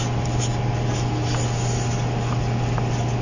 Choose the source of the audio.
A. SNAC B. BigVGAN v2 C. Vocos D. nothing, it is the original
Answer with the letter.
D